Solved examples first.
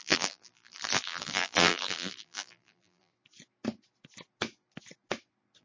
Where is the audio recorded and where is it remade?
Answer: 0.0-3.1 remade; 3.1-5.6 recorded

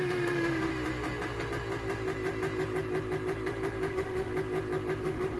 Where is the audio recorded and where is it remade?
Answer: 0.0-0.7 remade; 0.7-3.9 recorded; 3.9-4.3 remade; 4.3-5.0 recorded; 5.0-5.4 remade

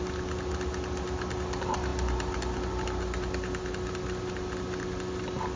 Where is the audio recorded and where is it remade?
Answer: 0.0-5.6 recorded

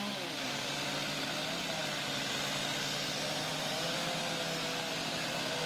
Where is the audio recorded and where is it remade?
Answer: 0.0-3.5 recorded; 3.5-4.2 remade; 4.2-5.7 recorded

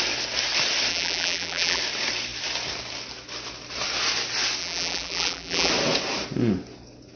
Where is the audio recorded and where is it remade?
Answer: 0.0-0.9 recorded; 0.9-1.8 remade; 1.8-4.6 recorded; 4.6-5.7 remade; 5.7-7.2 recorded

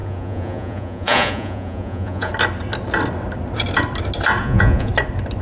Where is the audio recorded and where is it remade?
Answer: 0.0-2.3 remade; 2.3-4.4 recorded; 4.4-4.9 remade; 4.9-5.4 recorded

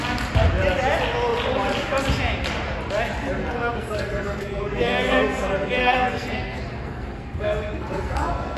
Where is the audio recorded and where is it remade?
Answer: 0.0-3.4 recorded; 3.4-8.6 remade